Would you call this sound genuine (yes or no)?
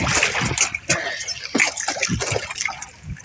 yes